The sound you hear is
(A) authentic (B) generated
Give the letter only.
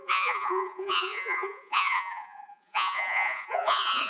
B